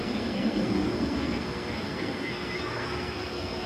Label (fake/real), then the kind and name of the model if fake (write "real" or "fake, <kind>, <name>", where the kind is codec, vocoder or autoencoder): fake, codec, SNAC